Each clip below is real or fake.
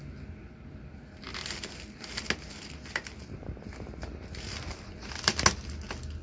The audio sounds real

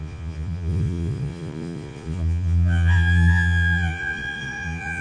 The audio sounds fake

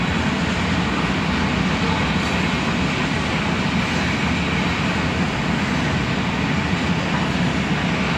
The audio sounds real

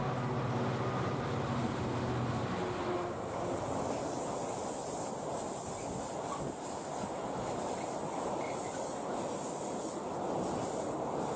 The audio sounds real